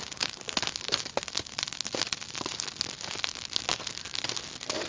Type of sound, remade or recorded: remade